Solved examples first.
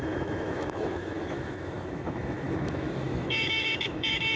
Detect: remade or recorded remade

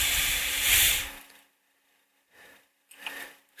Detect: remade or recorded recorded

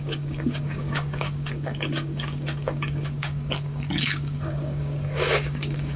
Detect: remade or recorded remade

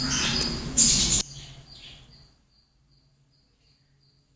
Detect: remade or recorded recorded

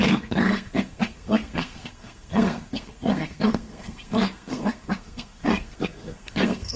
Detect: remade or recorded remade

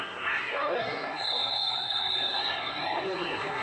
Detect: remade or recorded remade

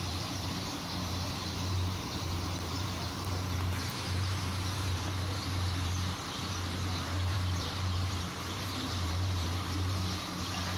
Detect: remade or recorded remade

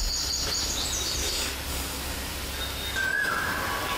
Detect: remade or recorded recorded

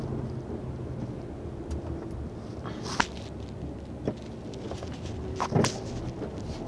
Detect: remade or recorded recorded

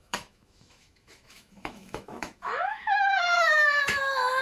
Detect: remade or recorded remade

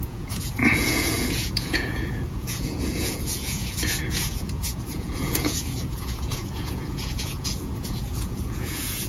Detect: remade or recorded remade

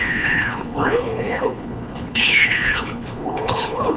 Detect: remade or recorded remade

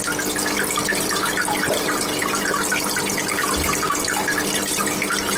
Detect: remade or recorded recorded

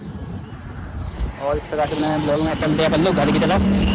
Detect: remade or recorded remade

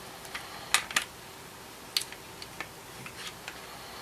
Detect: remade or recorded recorded